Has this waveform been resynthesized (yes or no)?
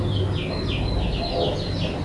no